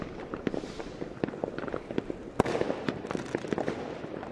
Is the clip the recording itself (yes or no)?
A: yes